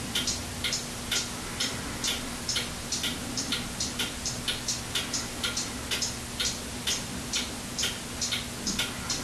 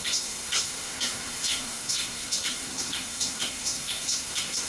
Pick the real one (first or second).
first